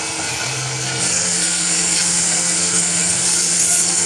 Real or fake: fake